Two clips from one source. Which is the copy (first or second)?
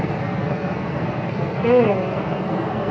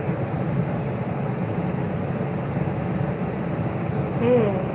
first